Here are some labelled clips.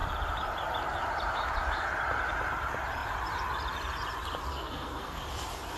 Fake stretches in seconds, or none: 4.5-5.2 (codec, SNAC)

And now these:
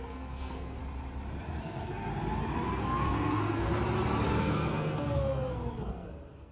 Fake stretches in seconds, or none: 0.0-0.8 (codec, SNAC); 1.6-2.1; 2.8-3.7; 4.3-6.5

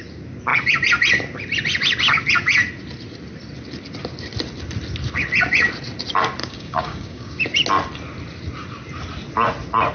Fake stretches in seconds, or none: 6.4-7.4 (codec, DAC)

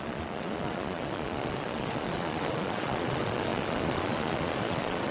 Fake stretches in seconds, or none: 0.0-5.1 (vocoder, Vocos)

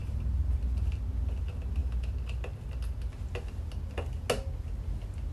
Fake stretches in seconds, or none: 0.0-0.6 (vocoder, BigVGAN v2)

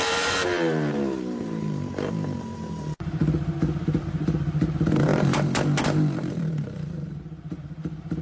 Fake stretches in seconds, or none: 0.0-3.2 (vocoder, BigVGAN v2); 3.8-8.2

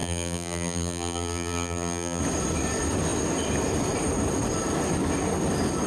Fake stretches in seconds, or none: 0.0-2.2 (vocoder, BigVGAN v2)